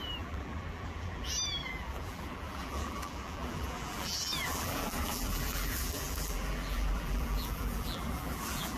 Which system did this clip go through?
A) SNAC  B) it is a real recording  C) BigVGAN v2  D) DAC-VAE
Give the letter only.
C